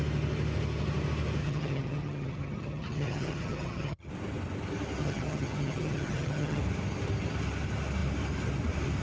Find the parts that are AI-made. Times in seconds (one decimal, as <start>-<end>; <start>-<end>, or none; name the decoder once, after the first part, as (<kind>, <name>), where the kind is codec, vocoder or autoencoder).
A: 1.4-4.1 (vocoder, HiFi-GAN); 5.0-6.6

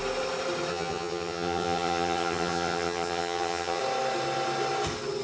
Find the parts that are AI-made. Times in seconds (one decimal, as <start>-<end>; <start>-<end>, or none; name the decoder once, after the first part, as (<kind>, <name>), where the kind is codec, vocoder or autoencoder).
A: 0.7-3.8 (vocoder, HiFi-GAN)

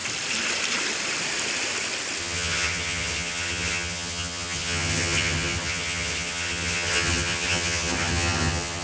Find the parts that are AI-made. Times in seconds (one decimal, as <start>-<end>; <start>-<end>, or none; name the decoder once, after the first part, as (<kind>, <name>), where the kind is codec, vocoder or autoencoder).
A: 2.2-8.8 (vocoder, HiFi-GAN)

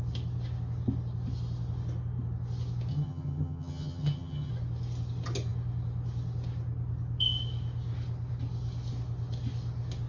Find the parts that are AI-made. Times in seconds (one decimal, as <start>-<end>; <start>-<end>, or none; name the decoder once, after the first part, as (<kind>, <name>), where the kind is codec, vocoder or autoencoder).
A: 2.9-4.5 (vocoder, HiFi-GAN)